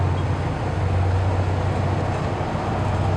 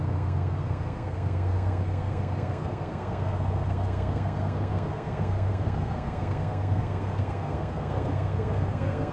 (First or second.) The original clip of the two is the first